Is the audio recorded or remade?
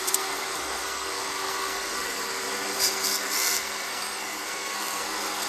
remade